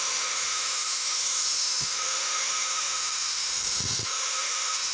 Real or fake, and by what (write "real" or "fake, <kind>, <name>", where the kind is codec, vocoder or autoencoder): fake, autoencoder, DAC-VAE